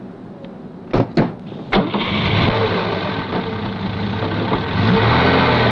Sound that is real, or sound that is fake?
real